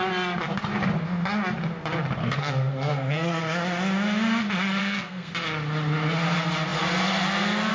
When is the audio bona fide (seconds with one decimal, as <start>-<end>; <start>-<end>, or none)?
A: 0.0-2.2; 3.4-4.8; 5.3-7.7